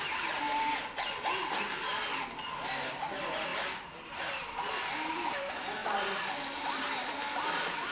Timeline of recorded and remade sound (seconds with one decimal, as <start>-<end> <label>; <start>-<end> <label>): 0.0-7.9 recorded